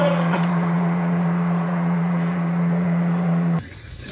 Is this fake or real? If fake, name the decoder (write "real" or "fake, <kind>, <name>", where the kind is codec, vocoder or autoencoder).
fake, vocoder, Vocos